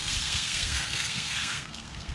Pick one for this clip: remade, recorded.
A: remade